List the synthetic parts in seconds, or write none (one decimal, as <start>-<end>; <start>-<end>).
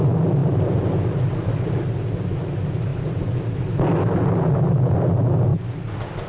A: none